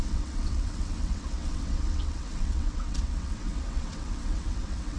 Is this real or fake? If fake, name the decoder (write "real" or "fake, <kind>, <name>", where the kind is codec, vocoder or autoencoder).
fake, vocoder, WaveNeXt